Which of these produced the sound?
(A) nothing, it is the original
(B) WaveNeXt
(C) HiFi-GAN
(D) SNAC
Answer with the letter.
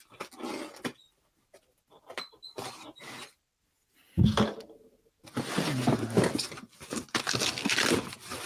A